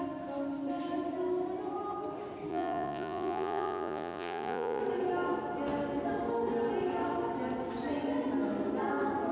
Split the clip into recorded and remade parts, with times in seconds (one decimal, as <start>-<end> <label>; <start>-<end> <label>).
0.0-2.5 recorded; 2.5-4.8 remade; 4.8-9.3 recorded